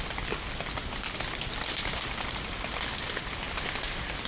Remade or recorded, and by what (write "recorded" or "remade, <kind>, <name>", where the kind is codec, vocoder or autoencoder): recorded